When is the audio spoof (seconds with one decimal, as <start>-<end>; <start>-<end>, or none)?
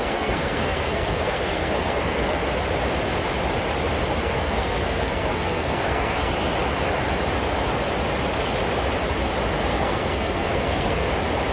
0.0-2.4; 4.2-6.3; 9.7-11.1